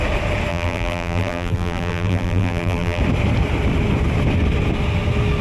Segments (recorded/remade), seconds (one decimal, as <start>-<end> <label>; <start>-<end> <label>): 0.0-0.5 recorded; 0.5-3.0 remade; 3.0-5.4 recorded

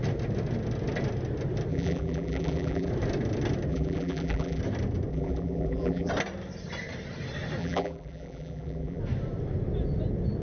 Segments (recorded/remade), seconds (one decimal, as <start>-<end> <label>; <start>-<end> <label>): 0.0-1.7 recorded; 1.7-2.9 remade; 2.9-3.7 recorded; 3.7-4.6 remade; 4.6-5.1 recorded; 5.1-6.1 remade; 6.1-7.6 recorded; 7.6-9.0 remade; 9.0-10.4 recorded

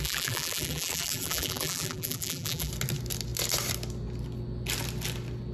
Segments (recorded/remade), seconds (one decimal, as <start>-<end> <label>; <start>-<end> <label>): 0.0-2.7 remade; 2.7-5.5 recorded

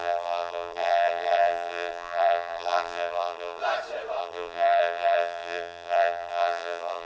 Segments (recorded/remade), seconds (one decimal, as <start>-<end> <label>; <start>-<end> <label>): 0.0-3.6 remade; 3.6-4.2 recorded; 4.2-7.1 remade

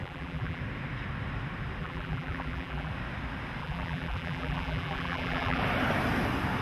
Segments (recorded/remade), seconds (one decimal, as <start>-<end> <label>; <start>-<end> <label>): 0.0-0.6 remade; 0.6-1.8 recorded; 1.8-2.9 remade; 2.9-3.6 recorded; 3.6-5.6 remade; 5.6-6.6 recorded

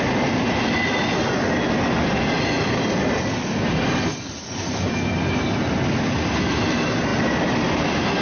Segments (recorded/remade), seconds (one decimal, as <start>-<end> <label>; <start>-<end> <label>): 0.0-4.1 recorded; 4.1-4.9 remade; 4.9-8.2 recorded